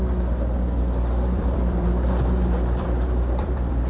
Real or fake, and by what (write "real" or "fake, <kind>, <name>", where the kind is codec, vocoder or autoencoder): fake, vocoder, BigVGAN v2